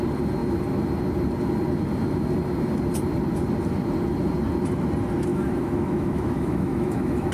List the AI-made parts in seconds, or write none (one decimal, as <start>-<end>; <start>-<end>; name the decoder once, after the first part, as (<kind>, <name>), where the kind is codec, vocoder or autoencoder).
5.3-7.3 (autoencoder, DAC-VAE)